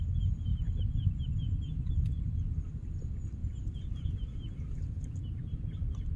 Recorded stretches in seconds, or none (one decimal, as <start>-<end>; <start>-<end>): 0.0-0.5; 1.3-3.4; 4.9-6.2